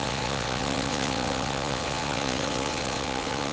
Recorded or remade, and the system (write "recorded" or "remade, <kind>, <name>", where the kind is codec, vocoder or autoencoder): remade, vocoder, WaveNeXt